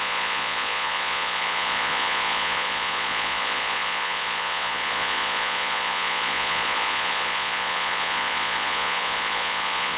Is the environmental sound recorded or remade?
remade